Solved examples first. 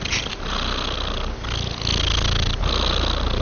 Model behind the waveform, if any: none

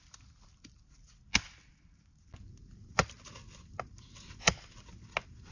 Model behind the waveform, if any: none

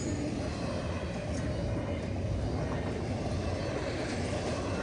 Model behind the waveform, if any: none